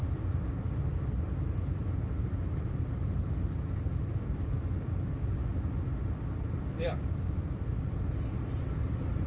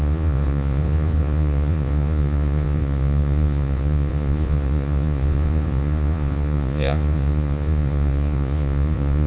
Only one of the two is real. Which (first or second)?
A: first